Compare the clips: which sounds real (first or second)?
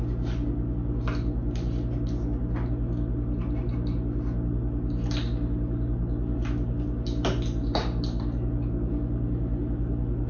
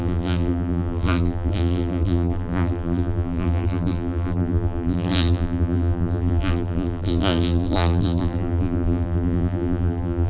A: first